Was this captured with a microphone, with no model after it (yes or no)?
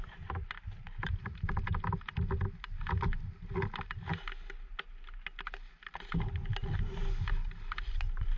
yes